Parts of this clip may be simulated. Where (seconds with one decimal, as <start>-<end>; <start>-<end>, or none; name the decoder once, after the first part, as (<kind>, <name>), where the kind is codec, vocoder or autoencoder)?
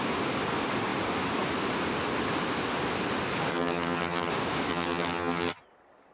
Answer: 3.5-4.3 (vocoder, HiFi-GAN); 4.7-5.6